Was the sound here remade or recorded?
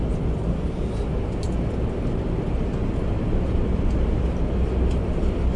recorded